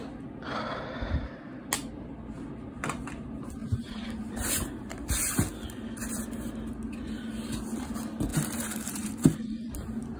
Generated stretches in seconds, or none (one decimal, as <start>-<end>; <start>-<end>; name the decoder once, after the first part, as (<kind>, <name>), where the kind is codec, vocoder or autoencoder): 3.6-5.1 (vocoder, BigVGAN v2); 8.3-9.7